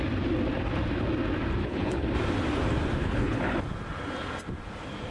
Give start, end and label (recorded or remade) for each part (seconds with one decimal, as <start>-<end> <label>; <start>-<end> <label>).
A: 0.0-1.6 recorded; 1.6-2.1 remade; 2.1-3.0 recorded; 3.0-3.6 remade; 3.6-5.1 recorded